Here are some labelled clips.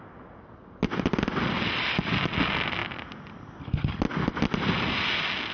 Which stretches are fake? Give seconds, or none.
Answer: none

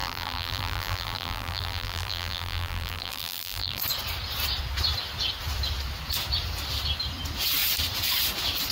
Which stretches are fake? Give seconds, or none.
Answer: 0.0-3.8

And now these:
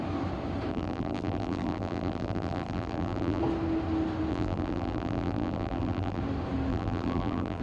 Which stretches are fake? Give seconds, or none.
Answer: 0.7-3.4; 4.3-6.2; 6.7-7.6

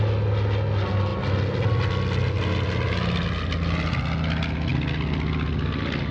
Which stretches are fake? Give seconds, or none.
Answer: none